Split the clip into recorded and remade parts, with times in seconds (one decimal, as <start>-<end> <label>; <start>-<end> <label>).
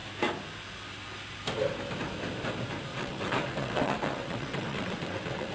0.0-2.9 recorded; 2.9-5.5 remade